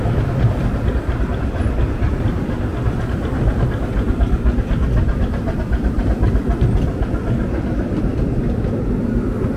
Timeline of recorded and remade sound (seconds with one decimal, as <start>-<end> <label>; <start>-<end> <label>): 0.0-8.1 recorded; 8.1-8.7 remade; 8.7-9.6 recorded